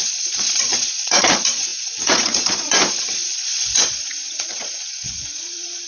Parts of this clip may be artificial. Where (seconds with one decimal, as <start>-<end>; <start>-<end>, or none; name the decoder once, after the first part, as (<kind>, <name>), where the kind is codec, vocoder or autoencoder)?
0.0-5.9 (vocoder, Vocos)